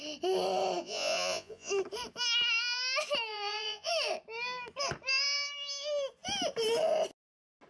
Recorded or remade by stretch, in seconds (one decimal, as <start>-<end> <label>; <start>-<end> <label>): 0.0-0.8 recorded; 0.8-1.7 remade; 1.7-3.3 recorded; 3.3-3.9 remade; 3.9-7.7 recorded